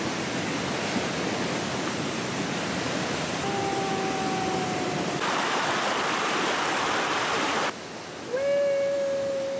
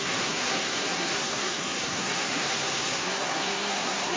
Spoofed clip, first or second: second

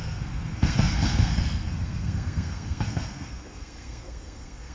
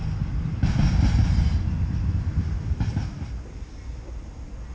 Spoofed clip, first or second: first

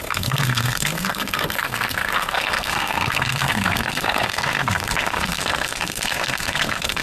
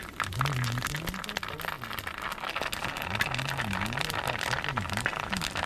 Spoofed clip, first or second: first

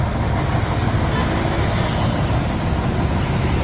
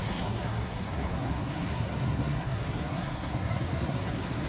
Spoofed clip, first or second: second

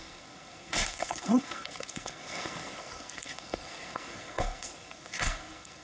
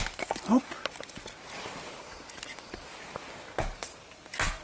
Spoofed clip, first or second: first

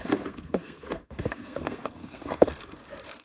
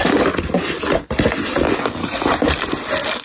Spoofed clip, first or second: first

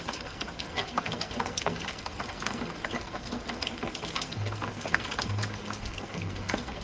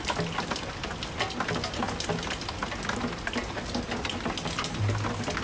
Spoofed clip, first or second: first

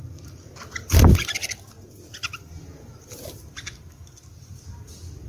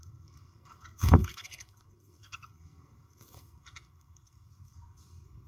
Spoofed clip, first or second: second